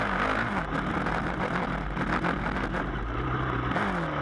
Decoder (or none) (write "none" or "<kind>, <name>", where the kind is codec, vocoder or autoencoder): none